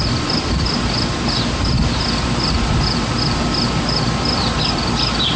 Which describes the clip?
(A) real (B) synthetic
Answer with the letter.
A